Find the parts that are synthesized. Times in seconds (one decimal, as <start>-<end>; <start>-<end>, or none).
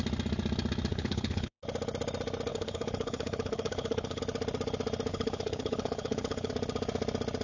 0.9-1.6; 2.5-4.2; 5.1-6.5